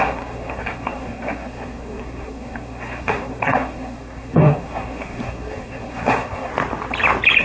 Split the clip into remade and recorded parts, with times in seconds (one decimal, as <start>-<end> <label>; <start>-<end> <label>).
0.0-6.5 remade; 6.5-7.4 recorded